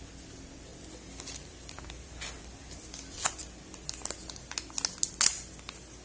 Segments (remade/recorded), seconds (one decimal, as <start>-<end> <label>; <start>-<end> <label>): 0.0-6.0 recorded